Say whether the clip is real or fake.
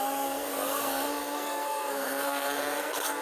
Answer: fake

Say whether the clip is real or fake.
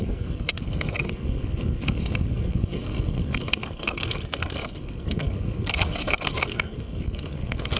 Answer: fake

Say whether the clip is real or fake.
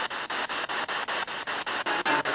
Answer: real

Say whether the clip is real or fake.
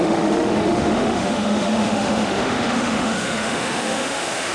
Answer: fake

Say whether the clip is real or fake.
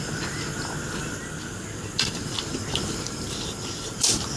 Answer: real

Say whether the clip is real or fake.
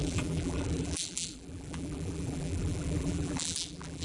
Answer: fake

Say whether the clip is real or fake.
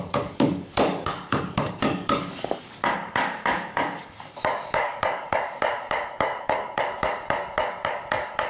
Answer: fake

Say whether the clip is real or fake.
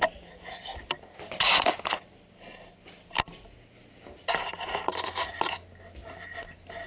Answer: real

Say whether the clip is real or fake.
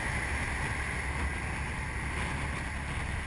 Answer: real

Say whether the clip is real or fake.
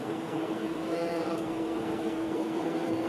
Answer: fake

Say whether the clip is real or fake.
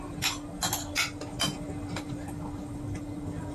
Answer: real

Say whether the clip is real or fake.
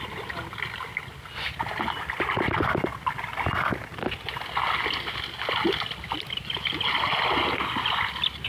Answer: real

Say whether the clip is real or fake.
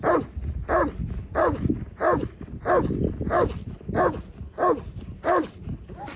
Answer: real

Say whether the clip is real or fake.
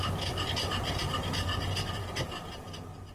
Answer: real